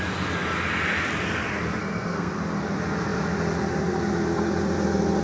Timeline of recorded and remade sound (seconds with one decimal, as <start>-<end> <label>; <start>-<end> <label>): 0.0-1.8 recorded; 1.8-2.3 remade; 2.3-5.2 recorded